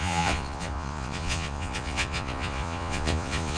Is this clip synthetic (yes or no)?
yes